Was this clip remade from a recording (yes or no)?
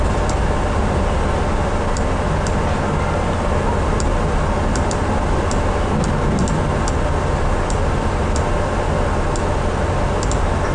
no